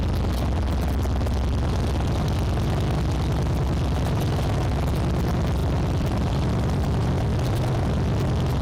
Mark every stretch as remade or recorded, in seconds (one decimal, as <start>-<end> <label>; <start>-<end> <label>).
0.0-5.6 recorded; 5.6-7.1 remade; 7.1-8.6 recorded